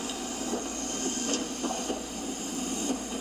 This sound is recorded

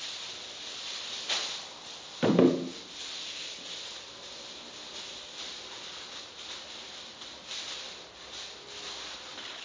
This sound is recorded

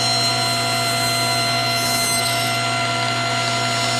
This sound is recorded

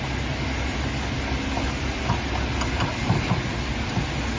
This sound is recorded